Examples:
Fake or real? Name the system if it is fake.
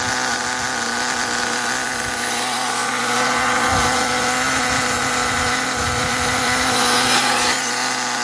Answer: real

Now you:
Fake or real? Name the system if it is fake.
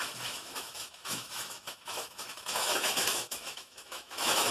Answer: fake, autoencoder, DAC-VAE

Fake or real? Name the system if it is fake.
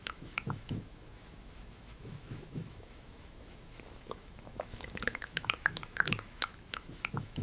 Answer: fake, autoencoder, DAC-VAE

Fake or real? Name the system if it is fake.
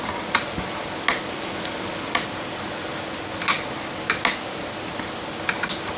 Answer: real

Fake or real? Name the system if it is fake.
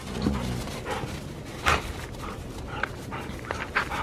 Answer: real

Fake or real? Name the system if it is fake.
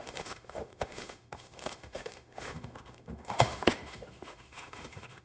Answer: fake, autoencoder, DAC-VAE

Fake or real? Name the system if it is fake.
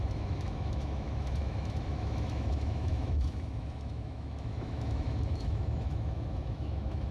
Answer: fake, autoencoder, DAC-VAE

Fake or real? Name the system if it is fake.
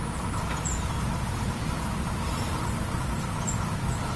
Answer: real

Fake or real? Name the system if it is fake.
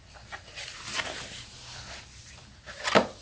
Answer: real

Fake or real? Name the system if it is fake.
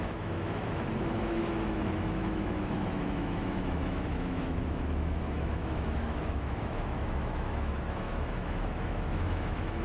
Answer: fake, autoencoder, DAC-VAE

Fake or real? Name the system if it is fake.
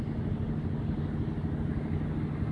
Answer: real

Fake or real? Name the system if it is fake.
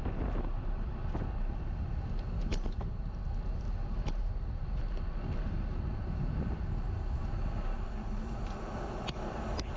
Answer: real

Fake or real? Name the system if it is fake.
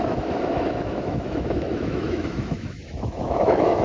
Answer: fake, autoencoder, DAC-VAE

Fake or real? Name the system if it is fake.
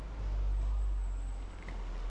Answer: real